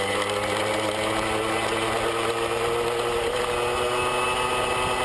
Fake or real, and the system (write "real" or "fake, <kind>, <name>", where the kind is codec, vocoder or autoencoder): real